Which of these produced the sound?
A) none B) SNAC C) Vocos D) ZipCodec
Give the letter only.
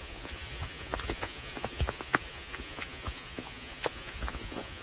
C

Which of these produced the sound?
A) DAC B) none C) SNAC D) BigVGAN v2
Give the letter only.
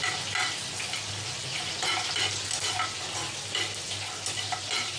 B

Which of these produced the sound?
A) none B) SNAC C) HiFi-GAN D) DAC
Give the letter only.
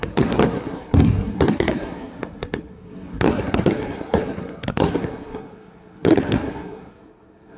B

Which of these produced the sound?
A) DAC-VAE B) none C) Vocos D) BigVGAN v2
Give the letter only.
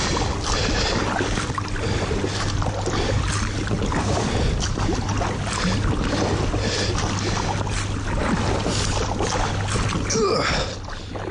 B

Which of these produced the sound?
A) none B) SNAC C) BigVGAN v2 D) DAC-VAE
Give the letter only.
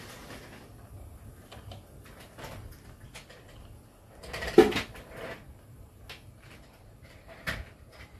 A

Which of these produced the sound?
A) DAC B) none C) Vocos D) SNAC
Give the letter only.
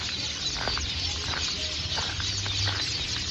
B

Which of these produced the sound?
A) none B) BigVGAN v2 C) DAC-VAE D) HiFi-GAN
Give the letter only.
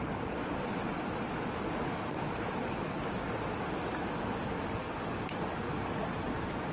A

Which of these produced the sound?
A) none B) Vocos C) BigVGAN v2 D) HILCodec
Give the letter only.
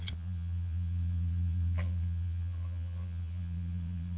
B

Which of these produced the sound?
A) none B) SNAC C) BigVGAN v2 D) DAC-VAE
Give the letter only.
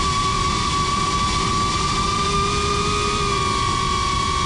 A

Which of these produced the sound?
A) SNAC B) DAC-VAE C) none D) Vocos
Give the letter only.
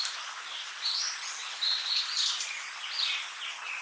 C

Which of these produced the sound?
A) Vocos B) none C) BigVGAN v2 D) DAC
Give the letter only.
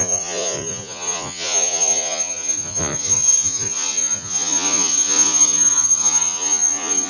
A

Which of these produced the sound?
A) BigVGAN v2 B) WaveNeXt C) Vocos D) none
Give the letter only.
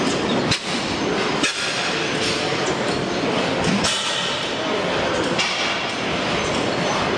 D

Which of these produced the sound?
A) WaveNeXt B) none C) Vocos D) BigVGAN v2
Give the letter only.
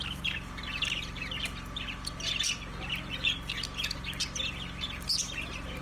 D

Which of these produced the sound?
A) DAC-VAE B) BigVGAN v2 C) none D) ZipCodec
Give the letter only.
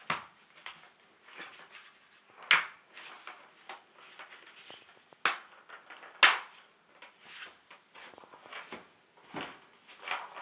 C